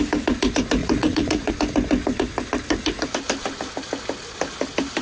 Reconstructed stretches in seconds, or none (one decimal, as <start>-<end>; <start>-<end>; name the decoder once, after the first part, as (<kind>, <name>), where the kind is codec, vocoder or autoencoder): 0.8-1.5 (vocoder, Vocos)